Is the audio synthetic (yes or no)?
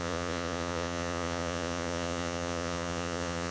yes